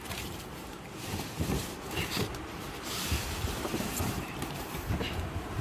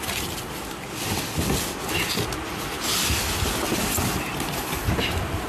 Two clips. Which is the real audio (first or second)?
second